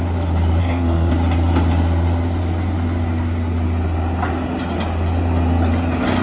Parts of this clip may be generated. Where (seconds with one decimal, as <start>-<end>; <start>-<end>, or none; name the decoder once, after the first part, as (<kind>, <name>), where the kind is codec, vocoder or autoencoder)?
0.6-1.1 (codec, SNAC)